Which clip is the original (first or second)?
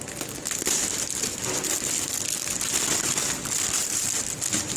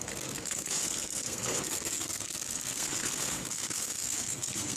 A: first